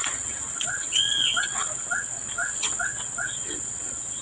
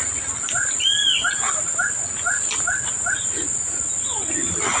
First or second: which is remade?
first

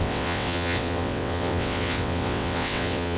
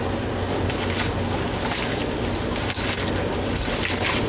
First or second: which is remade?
first